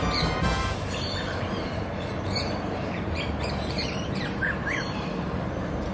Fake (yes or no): yes